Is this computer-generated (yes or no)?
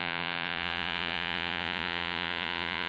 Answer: yes